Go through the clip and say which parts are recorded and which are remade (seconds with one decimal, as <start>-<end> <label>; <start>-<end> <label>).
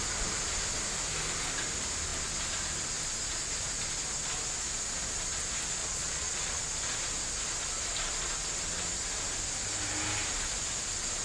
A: 0.0-5.8 recorded; 5.8-6.6 remade; 6.6-11.2 recorded